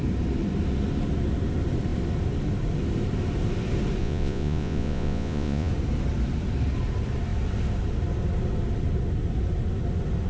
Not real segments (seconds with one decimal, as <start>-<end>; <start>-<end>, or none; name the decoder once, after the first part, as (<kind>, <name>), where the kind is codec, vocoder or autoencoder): 4.0-5.7 (vocoder, Vocos)